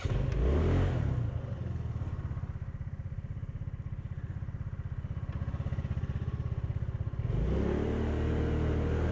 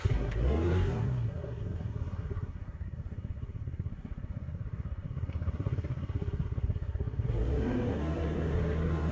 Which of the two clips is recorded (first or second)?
first